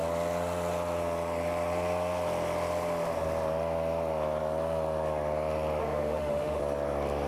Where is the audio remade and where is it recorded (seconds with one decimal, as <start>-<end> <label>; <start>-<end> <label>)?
0.0-5.8 recorded; 5.8-6.6 remade; 6.6-7.3 recorded